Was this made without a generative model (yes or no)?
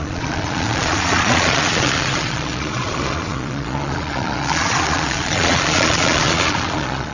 no